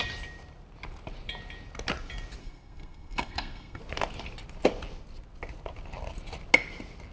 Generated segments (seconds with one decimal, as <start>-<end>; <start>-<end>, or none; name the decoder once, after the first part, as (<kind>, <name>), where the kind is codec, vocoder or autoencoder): 2.4-3.8 (codec, SNAC)